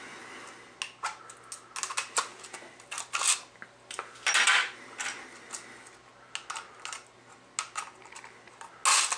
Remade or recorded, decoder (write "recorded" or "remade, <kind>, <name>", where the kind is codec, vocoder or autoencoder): recorded